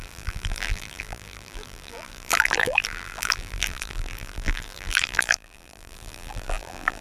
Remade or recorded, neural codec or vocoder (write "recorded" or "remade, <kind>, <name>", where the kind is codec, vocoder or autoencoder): remade, vocoder, BigVGAN v2